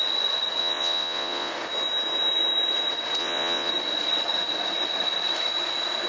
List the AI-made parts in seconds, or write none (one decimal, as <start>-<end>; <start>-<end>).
0.6-1.5; 3.2-3.7